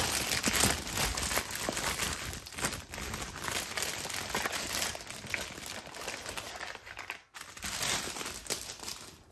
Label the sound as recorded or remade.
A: recorded